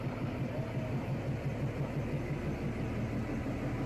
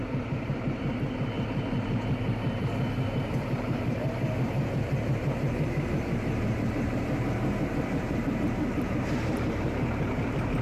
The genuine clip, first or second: first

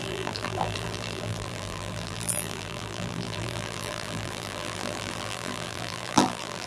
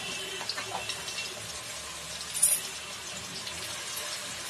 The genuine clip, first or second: second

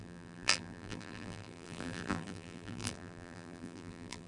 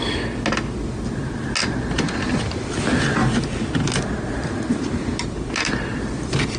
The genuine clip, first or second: second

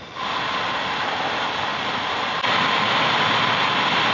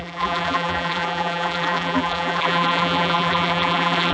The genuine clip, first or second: first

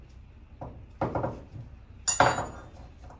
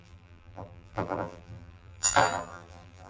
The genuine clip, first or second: first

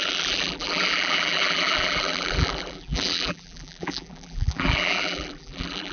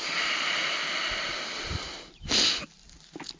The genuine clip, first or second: second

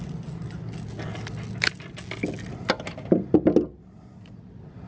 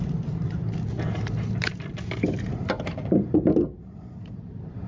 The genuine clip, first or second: first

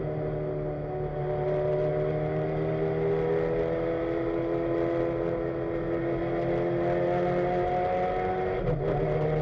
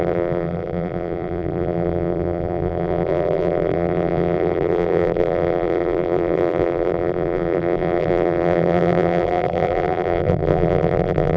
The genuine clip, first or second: first